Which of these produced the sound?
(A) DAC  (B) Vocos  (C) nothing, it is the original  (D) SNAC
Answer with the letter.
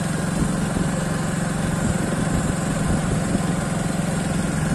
C